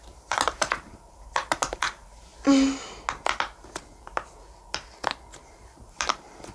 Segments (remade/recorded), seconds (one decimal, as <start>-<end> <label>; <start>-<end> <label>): 0.0-2.3 remade; 2.3-5.5 recorded; 5.5-6.5 remade